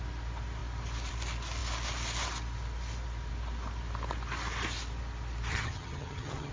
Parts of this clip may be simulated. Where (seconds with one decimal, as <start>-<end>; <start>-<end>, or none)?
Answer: 5.5-6.5